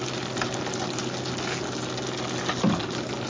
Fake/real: real